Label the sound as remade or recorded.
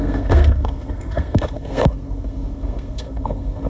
remade